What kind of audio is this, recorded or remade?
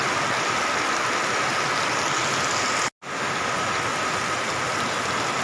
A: recorded